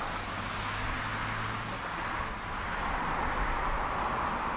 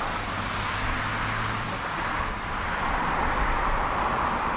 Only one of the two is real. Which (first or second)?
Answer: first